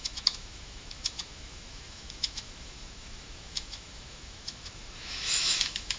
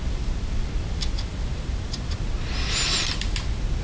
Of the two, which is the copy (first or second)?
first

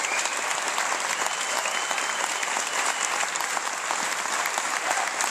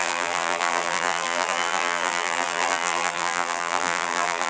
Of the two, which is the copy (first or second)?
second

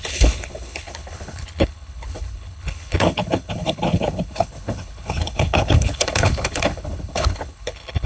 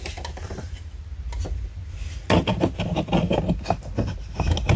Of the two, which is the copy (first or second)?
first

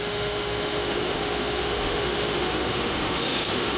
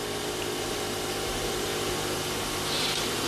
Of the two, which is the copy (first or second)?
first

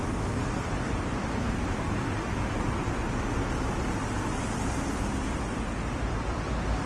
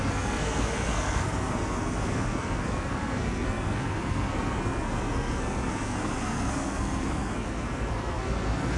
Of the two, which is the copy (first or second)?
second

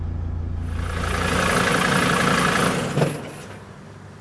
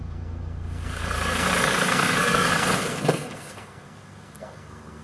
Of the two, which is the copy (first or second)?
second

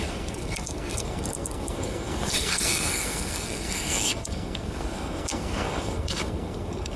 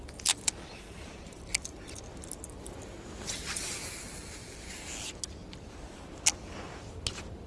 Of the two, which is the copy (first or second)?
first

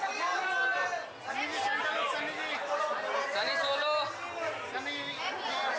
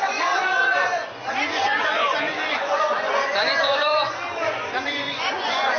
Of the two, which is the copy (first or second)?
second